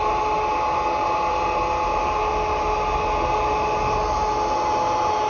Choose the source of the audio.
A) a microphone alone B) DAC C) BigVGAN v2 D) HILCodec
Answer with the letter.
A